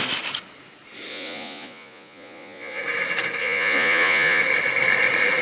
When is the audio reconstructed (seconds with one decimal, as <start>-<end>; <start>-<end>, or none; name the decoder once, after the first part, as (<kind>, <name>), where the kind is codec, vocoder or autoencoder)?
1.1-2.8 (vocoder, Vocos); 3.4-4.4